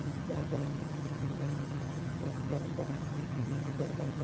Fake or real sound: fake